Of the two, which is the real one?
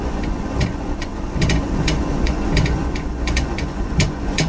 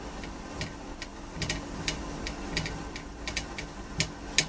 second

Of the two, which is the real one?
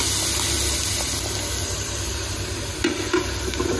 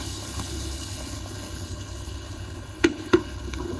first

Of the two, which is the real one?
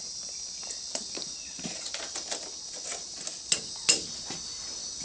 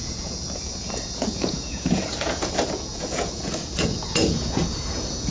first